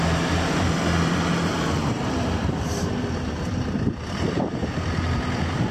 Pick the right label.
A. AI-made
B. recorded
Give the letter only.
A